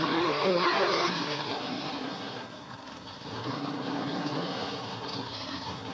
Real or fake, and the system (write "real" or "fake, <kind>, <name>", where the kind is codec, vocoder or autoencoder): fake, codec, SNAC